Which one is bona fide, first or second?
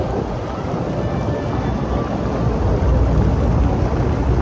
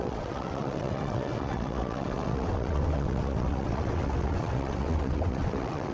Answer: first